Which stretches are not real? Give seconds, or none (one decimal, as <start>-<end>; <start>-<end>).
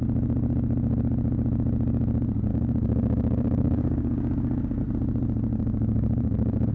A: 2.5-4.8; 5.5-6.7